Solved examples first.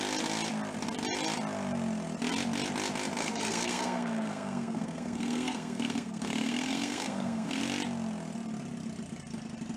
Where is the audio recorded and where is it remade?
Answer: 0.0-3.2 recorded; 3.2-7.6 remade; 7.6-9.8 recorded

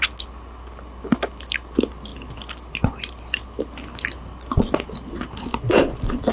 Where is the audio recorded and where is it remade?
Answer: 0.0-6.3 recorded

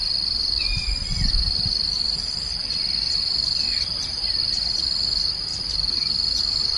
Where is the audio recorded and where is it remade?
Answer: 0.0-1.1 recorded; 1.1-4.7 remade; 4.7-5.5 recorded; 5.5-6.1 remade; 6.1-6.8 recorded

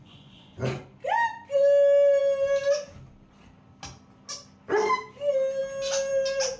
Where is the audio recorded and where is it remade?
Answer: 0.0-0.8 remade; 0.8-6.6 recorded